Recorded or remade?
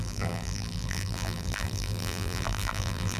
remade